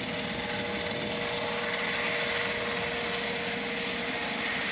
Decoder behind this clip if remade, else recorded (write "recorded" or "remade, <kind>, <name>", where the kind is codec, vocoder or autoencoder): recorded